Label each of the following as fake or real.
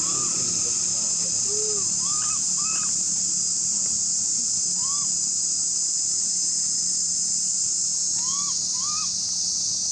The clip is real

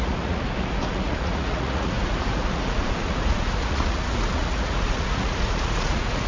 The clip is fake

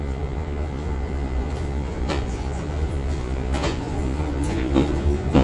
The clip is fake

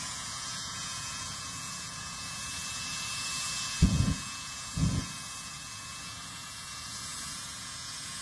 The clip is fake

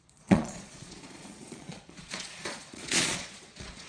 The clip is fake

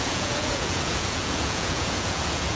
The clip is fake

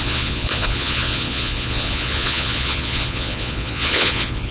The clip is fake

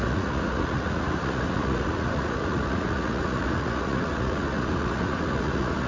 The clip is fake